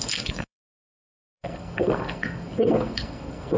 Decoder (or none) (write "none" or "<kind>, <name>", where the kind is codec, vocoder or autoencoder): codec, SNAC